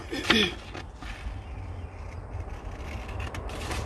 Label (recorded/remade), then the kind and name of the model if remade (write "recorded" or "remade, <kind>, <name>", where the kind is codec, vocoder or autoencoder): recorded